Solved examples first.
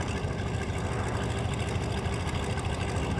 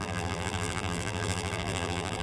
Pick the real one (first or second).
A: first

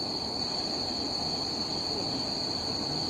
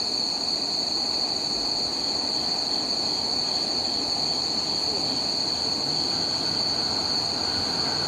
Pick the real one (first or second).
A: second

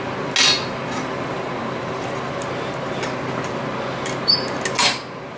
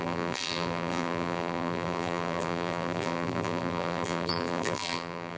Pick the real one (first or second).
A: first